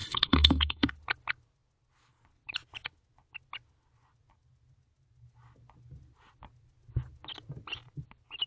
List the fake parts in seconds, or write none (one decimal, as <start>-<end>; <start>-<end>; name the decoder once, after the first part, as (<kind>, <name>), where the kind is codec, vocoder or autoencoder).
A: 0.0-0.9 (codec, SNAC)